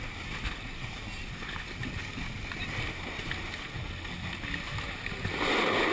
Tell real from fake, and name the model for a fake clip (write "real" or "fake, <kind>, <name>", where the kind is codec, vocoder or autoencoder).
real